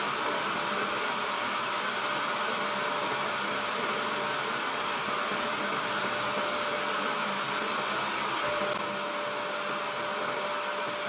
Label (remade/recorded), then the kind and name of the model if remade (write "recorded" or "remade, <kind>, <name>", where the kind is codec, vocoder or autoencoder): recorded